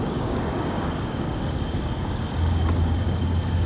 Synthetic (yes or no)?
yes